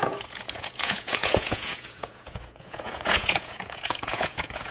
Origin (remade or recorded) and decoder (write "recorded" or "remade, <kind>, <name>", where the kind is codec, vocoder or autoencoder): remade, vocoder, Vocos